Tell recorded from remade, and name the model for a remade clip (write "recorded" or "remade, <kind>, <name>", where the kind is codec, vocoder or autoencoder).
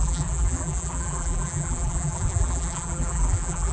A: remade, vocoder, BigVGAN v2